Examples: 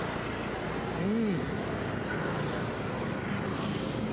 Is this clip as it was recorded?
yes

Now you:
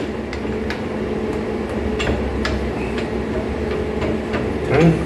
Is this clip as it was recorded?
yes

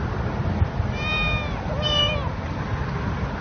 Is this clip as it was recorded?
yes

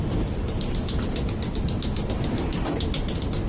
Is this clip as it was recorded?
yes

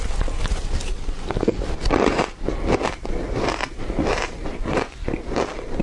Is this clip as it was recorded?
yes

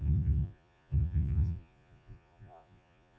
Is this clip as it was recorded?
no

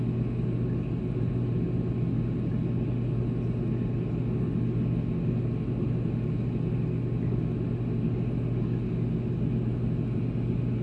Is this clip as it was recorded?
yes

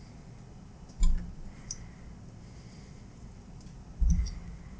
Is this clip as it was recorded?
yes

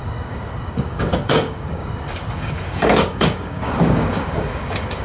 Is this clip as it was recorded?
no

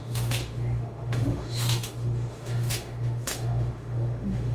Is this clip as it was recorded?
no